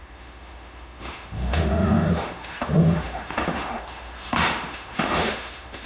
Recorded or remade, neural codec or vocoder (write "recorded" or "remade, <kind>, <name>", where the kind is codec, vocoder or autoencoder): remade, autoencoder, DAC-VAE